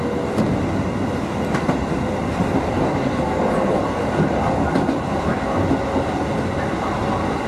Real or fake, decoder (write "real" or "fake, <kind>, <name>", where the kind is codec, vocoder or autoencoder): real